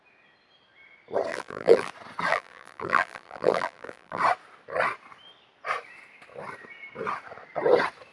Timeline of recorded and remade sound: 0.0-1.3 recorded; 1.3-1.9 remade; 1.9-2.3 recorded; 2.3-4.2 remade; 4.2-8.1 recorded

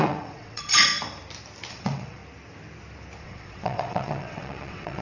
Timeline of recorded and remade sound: 0.0-0.9 remade; 0.9-1.7 recorded; 1.7-2.2 remade; 2.2-3.2 recorded; 3.2-5.0 remade

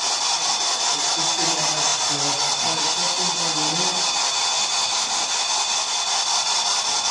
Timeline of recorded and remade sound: 0.0-7.1 recorded

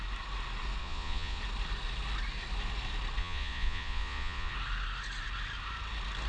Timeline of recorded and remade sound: 0.0-0.8 recorded; 0.8-1.4 remade; 1.4-3.2 recorded; 3.2-4.5 remade; 4.5-6.3 recorded

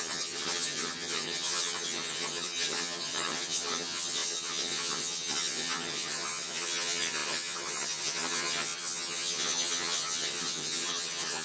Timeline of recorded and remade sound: 0.0-11.4 remade